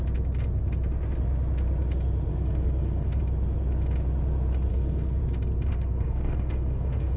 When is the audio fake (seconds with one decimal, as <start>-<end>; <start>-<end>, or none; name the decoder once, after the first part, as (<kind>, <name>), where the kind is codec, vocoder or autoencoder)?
2.3-3.2 (codec, SNAC); 4.7-5.2; 5.7-7.2